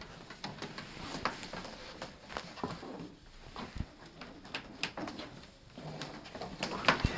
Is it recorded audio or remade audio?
recorded